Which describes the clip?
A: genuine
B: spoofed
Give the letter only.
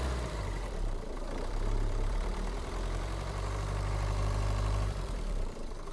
B